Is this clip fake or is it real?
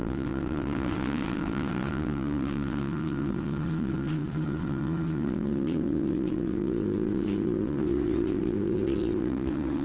fake